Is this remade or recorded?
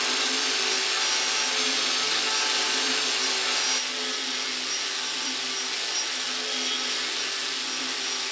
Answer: recorded